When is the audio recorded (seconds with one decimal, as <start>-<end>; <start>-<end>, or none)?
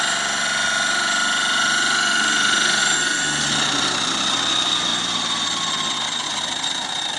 2.8-3.5